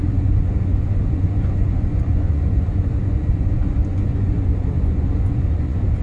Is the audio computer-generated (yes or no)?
yes